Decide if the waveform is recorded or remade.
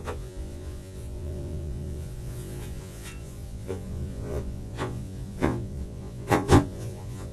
remade